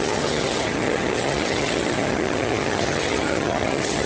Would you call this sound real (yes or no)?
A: no